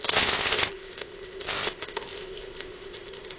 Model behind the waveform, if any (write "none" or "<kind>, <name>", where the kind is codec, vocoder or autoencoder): codec, ZipCodec